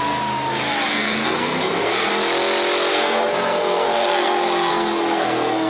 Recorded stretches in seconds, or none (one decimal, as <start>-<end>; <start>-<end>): 0.0-0.9; 2.1-2.9